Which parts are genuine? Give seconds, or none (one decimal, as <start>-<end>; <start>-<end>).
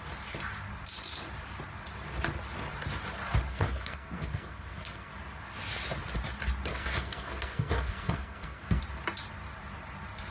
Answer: 0.0-3.5; 5.1-6.7; 8.8-10.3